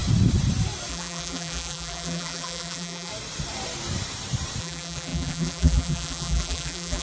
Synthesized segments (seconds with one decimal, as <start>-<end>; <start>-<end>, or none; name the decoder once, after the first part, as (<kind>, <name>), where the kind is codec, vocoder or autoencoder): 0.9-3.1 (vocoder, BigVGAN v2); 4.6-7.0